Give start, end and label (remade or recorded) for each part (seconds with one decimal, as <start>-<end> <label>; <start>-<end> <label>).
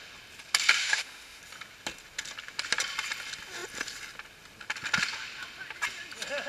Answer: 0.0-0.8 recorded; 0.8-1.4 remade; 1.4-6.5 recorded